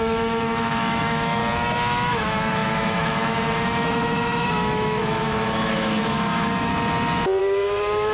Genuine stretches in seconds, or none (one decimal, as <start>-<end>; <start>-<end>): 1.4-2.1; 6.7-7.4